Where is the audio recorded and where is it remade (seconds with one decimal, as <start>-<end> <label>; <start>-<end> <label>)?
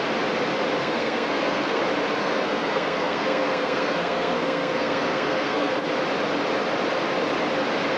0.0-0.8 recorded; 0.8-1.8 remade; 1.8-2.2 recorded; 2.2-5.7 remade; 5.7-8.0 recorded